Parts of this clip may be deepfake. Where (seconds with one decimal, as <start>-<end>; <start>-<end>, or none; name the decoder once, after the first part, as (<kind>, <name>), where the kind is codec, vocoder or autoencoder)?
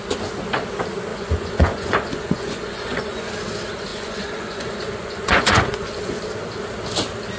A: 1.1-3.3 (vocoder, Vocos); 3.9-6.2